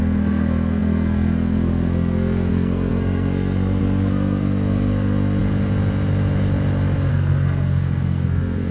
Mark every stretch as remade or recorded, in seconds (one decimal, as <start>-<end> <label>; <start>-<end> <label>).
0.0-5.4 remade; 5.4-7.1 recorded; 7.1-8.7 remade